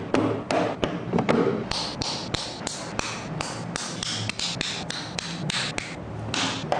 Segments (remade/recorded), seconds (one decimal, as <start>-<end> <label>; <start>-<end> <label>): 0.0-6.8 recorded